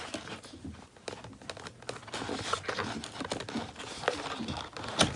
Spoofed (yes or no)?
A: no